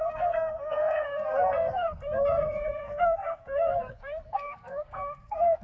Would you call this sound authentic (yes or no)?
no